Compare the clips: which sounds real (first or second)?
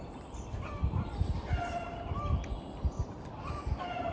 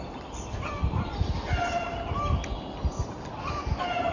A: second